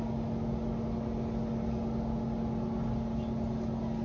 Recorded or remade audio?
recorded